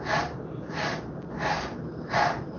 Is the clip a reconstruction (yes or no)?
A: no